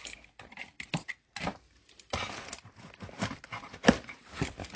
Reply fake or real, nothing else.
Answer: real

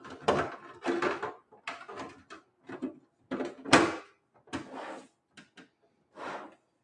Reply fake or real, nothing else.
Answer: real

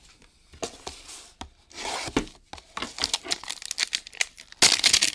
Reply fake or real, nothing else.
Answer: real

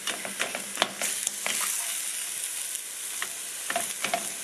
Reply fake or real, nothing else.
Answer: real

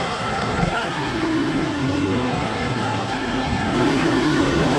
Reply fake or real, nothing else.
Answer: fake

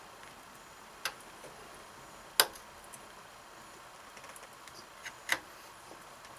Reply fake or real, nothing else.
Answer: real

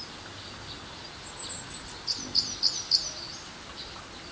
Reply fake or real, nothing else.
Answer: real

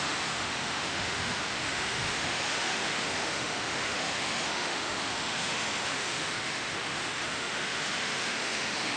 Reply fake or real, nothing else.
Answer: fake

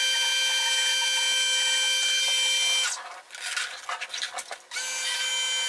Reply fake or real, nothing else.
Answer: real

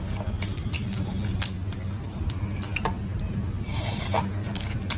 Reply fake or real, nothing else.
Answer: real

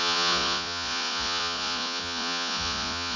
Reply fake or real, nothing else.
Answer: fake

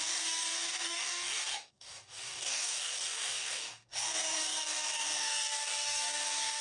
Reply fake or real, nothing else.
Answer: fake